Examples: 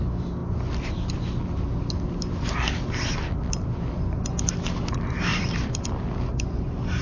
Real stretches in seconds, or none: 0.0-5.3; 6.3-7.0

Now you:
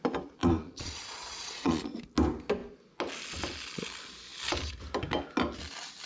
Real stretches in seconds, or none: 0.0-0.4; 2.0-6.1

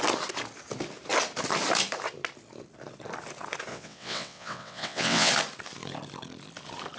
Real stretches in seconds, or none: 0.0-3.7; 5.3-7.0

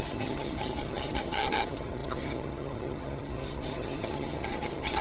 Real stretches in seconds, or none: none

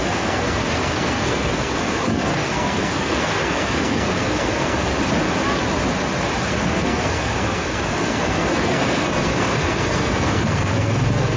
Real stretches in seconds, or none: 4.9-6.5

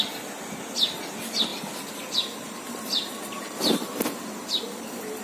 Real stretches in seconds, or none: 0.0-1.5; 4.6-5.2

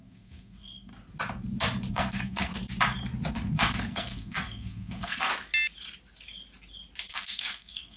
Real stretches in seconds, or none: 0.9-1.9; 2.5-3.3; 5.3-7.1